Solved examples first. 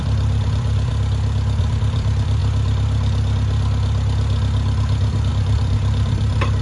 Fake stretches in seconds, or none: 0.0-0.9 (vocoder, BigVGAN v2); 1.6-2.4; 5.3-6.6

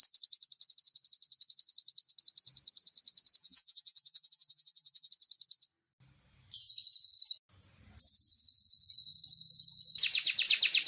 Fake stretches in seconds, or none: 3.4-5.1 (vocoder, BigVGAN v2)

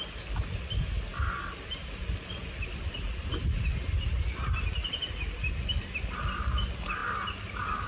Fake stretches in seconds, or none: none

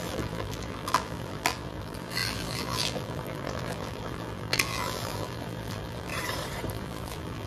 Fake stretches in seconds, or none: 0.0-6.1 (vocoder, BigVGAN v2); 6.7-7.5

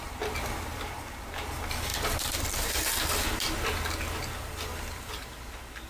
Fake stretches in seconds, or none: none

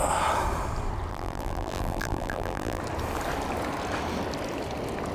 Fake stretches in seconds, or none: 1.1-2.8 (vocoder, BigVGAN v2)